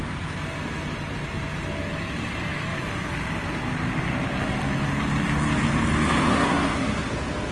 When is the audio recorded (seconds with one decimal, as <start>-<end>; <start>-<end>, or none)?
0.0-6.3; 7.1-7.5